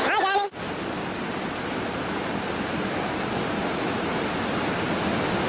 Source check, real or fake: real